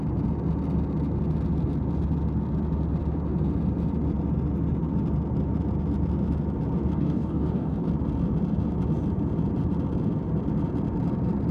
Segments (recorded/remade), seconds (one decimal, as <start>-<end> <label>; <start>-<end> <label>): 0.0-6.9 recorded; 6.9-7.9 remade; 7.9-11.5 recorded